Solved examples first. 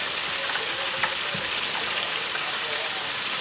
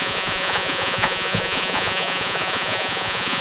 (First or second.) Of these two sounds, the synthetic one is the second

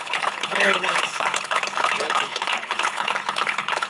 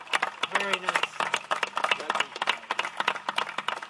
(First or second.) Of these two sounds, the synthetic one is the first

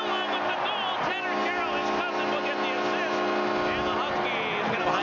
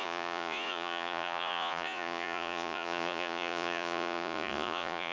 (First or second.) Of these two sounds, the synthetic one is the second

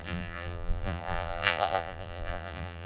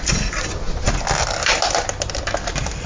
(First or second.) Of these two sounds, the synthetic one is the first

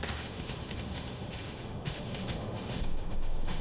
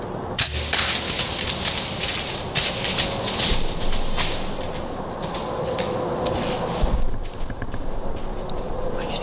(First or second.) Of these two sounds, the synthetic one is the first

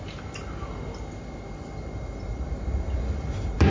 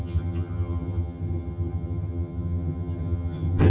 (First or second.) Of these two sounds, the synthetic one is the second